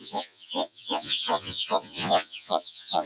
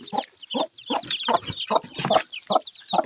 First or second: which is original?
second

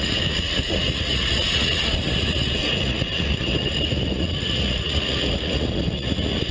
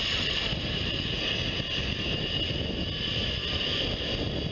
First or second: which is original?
second